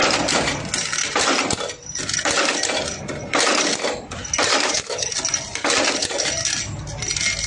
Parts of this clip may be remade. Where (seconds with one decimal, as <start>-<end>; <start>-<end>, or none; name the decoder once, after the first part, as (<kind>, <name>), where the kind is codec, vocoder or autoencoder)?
4.5-5.1 (codec, DAC)